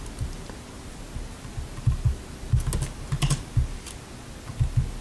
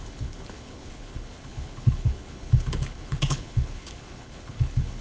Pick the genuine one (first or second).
first